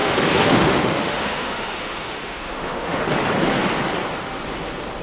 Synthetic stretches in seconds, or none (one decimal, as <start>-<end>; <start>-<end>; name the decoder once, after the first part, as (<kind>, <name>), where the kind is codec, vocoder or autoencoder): 0.0-3.0 (autoencoder, DAC-VAE)